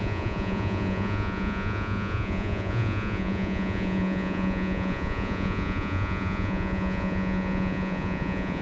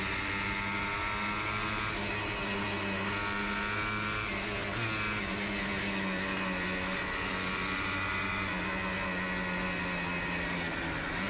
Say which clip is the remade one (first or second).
first